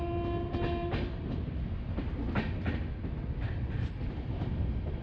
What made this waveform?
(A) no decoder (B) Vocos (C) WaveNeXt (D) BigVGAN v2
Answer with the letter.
A